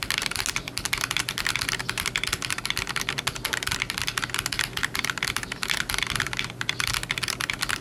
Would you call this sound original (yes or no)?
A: yes